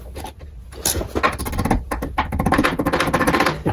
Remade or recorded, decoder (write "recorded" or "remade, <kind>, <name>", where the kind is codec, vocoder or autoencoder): recorded